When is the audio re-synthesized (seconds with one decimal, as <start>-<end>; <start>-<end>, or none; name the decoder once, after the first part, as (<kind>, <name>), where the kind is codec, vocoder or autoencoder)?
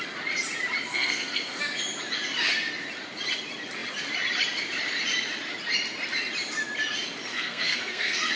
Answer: 0.9-1.6 (codec, SNAC); 7.3-8.4